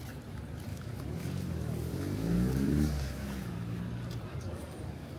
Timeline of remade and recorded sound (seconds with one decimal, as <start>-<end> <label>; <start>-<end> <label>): 0.0-0.7 recorded; 0.7-3.8 remade; 3.8-4.3 recorded; 4.3-5.2 remade